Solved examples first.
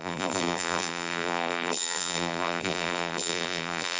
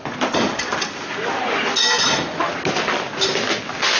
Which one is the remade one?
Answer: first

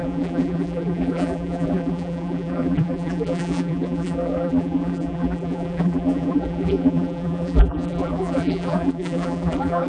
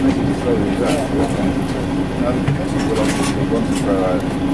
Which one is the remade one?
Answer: first